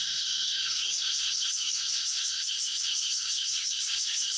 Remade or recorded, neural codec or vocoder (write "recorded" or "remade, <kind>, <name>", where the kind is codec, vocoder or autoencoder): remade, codec, SNAC